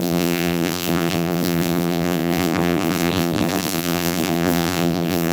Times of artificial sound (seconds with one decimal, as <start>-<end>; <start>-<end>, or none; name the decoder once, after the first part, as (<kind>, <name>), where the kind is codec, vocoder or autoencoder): 0.0-5.3 (vocoder, BigVGAN v2)